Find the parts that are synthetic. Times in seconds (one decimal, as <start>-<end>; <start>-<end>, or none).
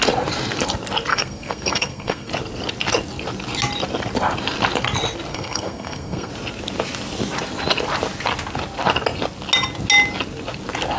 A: 1.1-2.3; 5.3-6.3